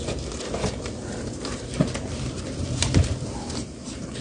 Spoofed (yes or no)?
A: no